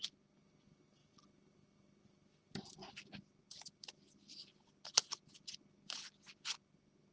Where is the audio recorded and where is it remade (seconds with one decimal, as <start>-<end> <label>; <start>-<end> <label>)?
0.0-1.0 recorded; 1.0-5.3 remade; 5.3-7.1 recorded